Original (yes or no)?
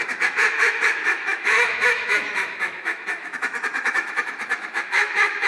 no